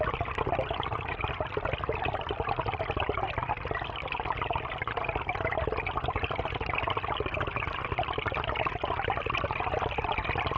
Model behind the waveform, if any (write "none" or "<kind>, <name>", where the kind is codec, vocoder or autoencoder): none